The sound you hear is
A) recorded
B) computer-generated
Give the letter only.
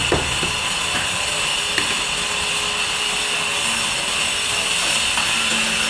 A